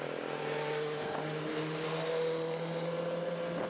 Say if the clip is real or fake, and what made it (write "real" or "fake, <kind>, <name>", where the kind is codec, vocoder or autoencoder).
real